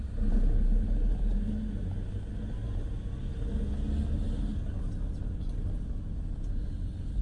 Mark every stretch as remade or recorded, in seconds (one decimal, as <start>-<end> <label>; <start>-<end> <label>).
0.0-7.2 recorded